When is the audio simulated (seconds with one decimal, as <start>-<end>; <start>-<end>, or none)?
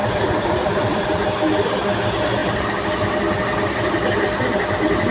0.0-1.1